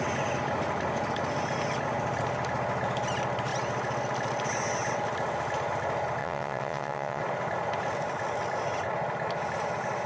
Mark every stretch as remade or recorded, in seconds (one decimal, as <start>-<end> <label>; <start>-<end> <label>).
0.0-6.2 recorded; 6.2-7.2 remade; 7.2-10.1 recorded